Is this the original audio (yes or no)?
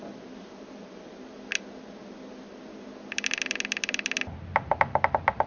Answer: yes